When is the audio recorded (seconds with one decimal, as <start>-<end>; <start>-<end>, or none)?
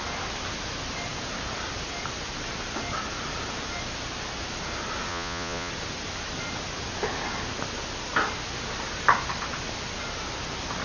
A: 0.0-5.1; 5.7-10.8